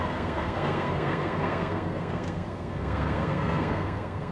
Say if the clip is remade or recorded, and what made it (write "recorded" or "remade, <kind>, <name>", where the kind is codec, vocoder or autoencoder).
remade, codec, SNAC